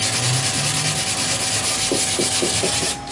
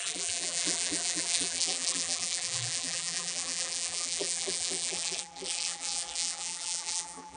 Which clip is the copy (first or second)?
second